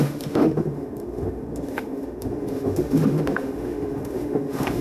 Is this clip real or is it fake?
fake